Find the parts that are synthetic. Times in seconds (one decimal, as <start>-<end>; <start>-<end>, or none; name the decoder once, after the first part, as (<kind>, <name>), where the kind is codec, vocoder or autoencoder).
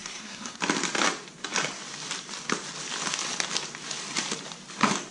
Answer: 0.0-0.6 (codec, SNAC)